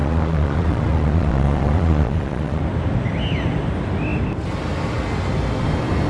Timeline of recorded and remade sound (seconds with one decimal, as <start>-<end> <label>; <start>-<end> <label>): 0.0-2.6 remade; 2.6-6.1 recorded